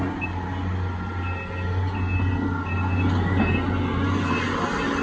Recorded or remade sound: recorded